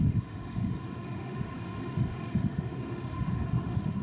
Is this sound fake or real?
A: fake